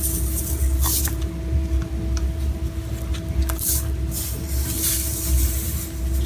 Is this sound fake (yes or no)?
no